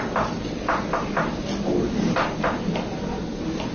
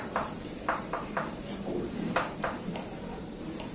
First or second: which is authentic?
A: first